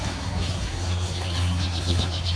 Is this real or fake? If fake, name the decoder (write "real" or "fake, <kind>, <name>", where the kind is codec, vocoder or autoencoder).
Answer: fake, codec, SNAC